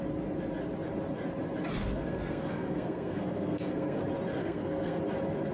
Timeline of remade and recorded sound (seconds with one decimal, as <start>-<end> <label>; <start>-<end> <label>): 0.0-1.8 recorded; 1.8-4.0 remade; 4.0-4.4 recorded; 4.4-5.0 remade; 5.0-5.5 recorded

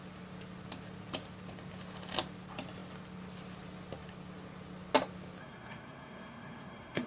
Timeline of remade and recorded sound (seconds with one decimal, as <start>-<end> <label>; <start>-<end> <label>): 0.0-5.4 recorded; 5.4-7.1 remade

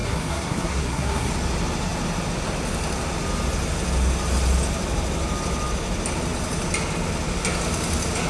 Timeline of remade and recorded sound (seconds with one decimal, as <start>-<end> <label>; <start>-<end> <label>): 0.0-1.3 remade; 1.3-8.3 recorded